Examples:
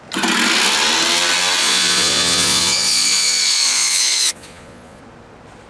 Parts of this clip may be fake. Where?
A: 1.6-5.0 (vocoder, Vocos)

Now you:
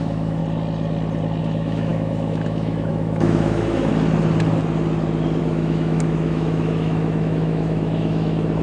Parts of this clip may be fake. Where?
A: 0.0-0.4 (autoencoder, DAC-VAE); 1.4-3.9; 5.4-8.6